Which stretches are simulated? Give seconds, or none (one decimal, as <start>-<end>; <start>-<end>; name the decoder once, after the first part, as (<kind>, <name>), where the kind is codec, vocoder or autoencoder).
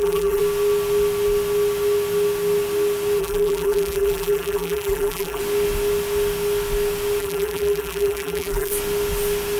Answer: 0.0-0.4 (vocoder, BigVGAN v2); 3.2-5.4; 7.2-8.7